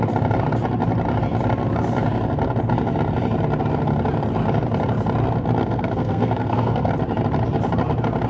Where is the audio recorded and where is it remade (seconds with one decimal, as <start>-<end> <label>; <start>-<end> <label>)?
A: 0.0-5.6 recorded; 5.6-6.9 remade; 6.9-8.3 recorded